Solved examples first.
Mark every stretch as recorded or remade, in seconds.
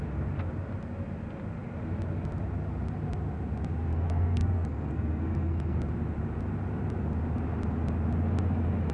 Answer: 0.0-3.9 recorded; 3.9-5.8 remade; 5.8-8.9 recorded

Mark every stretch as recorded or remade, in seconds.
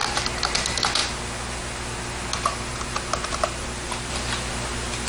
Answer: 0.0-5.1 recorded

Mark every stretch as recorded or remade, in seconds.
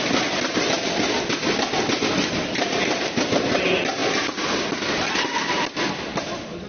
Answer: 0.0-6.7 recorded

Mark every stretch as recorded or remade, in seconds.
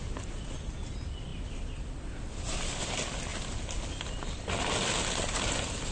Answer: 0.0-5.9 recorded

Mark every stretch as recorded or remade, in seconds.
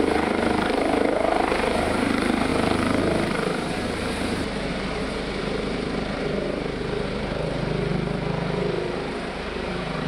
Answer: 0.0-2.5 remade; 2.5-3.0 recorded; 3.0-10.1 remade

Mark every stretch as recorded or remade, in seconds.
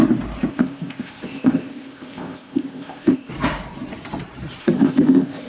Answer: 0.0-0.5 recorded; 0.5-3.3 remade; 3.3-4.6 recorded; 4.6-5.5 remade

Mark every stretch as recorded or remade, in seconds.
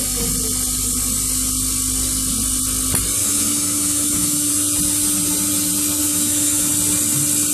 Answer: 0.0-3.2 recorded; 3.2-4.5 remade; 4.5-6.0 recorded; 6.0-6.7 remade; 6.7-7.5 recorded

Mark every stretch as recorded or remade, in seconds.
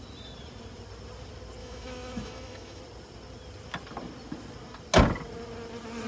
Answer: 0.0-1.6 recorded; 1.6-2.8 remade; 2.8-6.1 recorded